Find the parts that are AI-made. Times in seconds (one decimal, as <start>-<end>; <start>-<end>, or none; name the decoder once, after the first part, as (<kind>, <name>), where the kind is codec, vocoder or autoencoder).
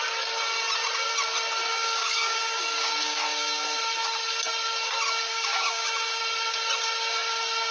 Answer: 1.7-3.8 (codec, DAC); 5.3-6.2